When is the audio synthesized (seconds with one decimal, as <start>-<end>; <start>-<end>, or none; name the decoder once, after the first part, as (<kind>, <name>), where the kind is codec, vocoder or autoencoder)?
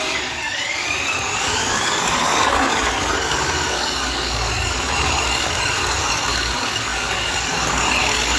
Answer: 0.0-8.4 (codec, DAC)